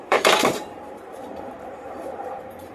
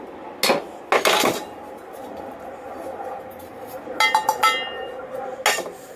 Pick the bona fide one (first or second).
second